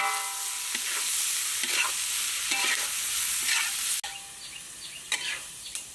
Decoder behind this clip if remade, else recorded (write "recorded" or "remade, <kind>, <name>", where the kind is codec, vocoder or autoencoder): recorded